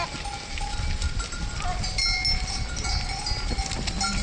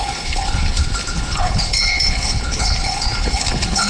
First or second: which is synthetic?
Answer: second